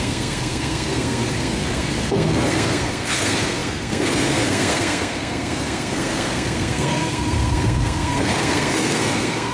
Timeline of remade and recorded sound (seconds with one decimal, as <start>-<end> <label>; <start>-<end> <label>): 0.0-9.5 remade